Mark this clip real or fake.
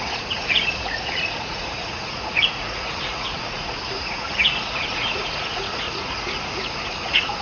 fake